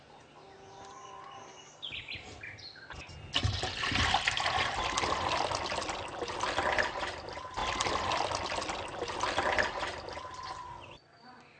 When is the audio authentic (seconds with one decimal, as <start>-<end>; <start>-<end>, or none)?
0.0-11.6